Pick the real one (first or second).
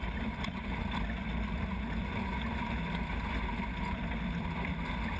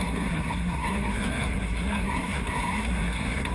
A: first